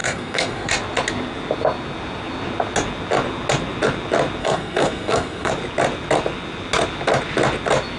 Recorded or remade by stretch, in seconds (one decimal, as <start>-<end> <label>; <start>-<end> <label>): 0.0-0.7 remade; 0.7-4.4 recorded; 4.4-5.5 remade; 5.5-8.0 recorded